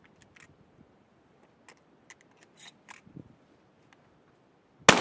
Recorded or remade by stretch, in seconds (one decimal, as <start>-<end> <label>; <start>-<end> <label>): 0.0-5.0 recorded